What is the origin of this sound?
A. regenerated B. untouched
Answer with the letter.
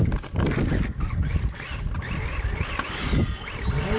B